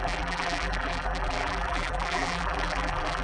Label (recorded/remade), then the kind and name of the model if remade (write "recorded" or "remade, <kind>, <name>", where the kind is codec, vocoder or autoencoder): remade, vocoder, BigVGAN v2